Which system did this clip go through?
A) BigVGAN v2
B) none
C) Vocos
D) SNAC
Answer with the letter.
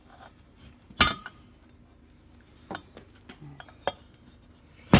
B